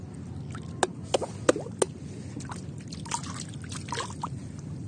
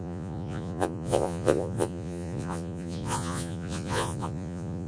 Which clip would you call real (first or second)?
first